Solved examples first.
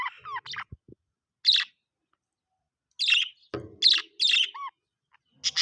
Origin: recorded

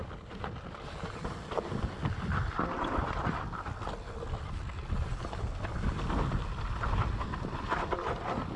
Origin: recorded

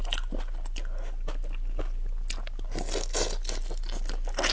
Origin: recorded